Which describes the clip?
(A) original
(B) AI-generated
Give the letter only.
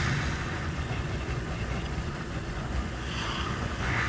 B